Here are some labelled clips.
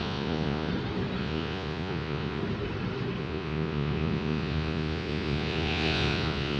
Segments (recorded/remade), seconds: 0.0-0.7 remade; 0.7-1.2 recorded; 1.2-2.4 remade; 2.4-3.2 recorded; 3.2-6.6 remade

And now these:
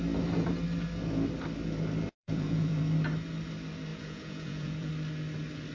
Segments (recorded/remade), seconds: 0.0-2.2 recorded; 2.2-2.8 remade; 2.8-3.9 recorded; 3.9-4.9 remade; 4.9-5.7 recorded

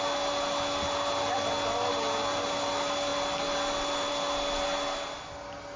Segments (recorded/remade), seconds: 0.0-5.8 recorded

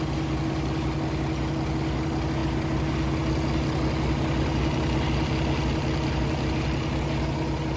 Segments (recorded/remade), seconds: 0.0-7.8 recorded

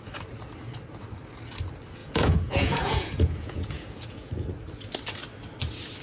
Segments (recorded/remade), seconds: 0.0-2.0 recorded; 2.0-4.3 remade; 4.3-6.0 recorded

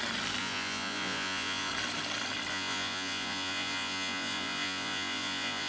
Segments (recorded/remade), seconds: 0.0-0.4 recorded; 0.4-1.7 remade; 1.7-2.5 recorded; 2.5-5.7 remade